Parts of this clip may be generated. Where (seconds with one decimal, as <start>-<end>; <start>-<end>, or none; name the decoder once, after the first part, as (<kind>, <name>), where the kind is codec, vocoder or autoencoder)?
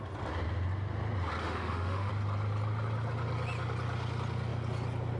1.4-2.1 (autoencoder, DAC-VAE)